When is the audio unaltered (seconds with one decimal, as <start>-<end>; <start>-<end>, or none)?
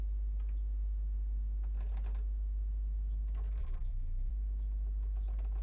0.0-3.6; 4.3-5.6